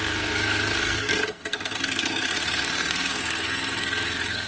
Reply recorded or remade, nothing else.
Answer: remade